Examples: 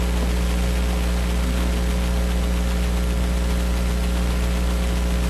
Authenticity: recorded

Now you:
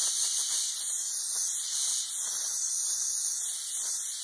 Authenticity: recorded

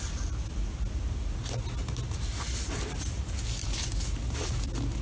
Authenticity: recorded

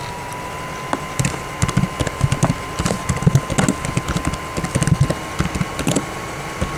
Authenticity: recorded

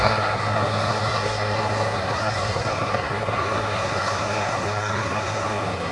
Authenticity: remade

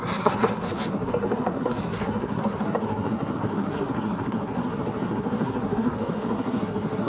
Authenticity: remade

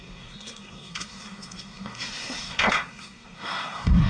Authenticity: remade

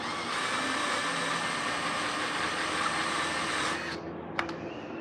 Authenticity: recorded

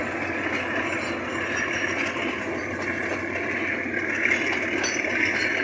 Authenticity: recorded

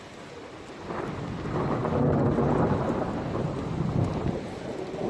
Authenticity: recorded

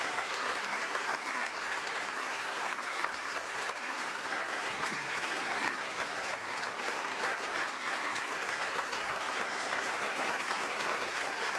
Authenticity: remade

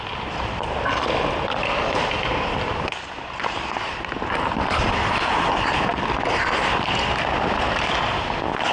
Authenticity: recorded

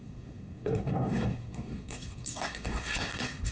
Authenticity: remade